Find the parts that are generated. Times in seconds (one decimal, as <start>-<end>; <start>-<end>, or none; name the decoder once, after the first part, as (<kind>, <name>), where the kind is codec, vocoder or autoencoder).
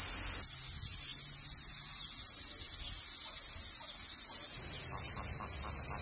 none